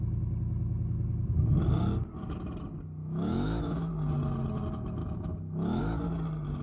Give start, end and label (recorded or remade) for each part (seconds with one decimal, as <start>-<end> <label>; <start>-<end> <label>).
0.0-3.0 recorded; 3.0-3.9 remade; 3.9-5.0 recorded; 5.0-5.8 remade; 5.8-6.6 recorded